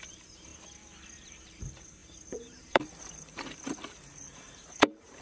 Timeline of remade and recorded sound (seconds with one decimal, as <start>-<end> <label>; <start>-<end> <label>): 0.0-0.5 remade; 0.5-1.3 recorded; 1.3-5.2 remade